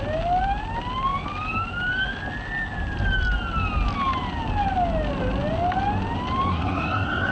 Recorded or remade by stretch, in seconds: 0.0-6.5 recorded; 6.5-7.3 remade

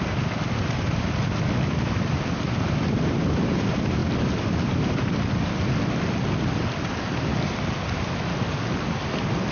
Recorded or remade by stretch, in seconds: 0.0-9.5 recorded

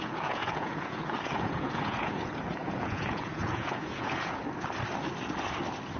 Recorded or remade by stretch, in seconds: 0.0-4.4 remade; 4.4-6.0 recorded

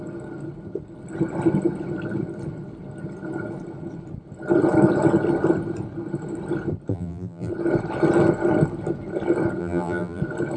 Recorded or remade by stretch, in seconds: 0.0-6.9 recorded; 6.9-7.5 remade; 7.5-9.6 recorded; 9.6-10.2 remade; 10.2-10.6 recorded

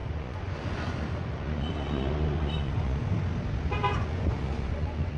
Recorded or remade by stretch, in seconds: 0.0-3.1 remade; 3.1-3.9 recorded; 3.9-5.2 remade